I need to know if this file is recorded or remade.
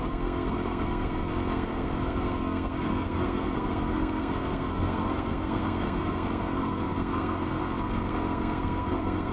remade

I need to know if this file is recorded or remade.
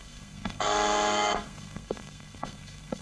remade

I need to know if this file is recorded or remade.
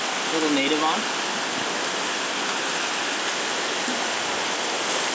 recorded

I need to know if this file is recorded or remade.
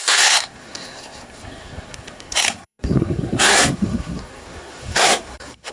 remade